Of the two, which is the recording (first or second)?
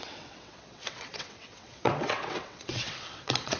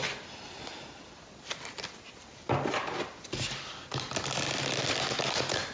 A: second